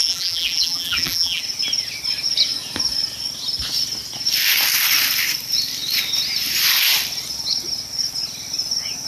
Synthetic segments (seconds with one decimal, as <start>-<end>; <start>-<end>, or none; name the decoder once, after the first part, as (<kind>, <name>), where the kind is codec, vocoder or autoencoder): 0.0-1.4 (vocoder, BigVGAN v2)